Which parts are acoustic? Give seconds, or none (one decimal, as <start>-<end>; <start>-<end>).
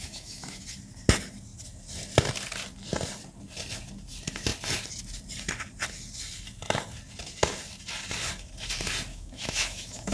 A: 0.6-9.1